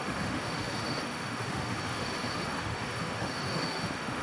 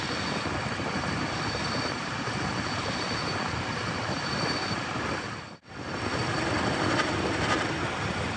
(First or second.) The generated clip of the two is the first